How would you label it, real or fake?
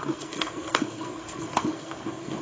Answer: fake